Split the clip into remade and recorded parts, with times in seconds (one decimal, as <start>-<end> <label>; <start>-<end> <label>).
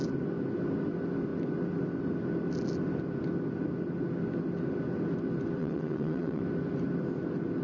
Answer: 0.0-5.6 recorded; 5.6-6.4 remade; 6.4-7.6 recorded